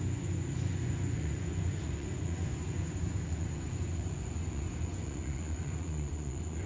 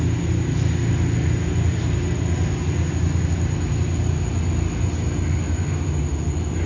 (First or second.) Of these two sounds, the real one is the second